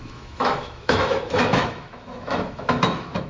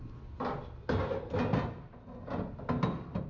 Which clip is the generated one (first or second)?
first